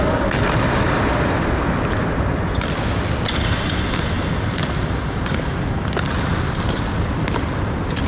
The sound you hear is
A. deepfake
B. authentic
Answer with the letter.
B